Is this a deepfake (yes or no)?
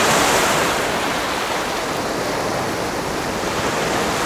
no